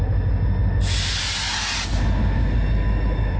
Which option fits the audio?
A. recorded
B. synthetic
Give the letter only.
A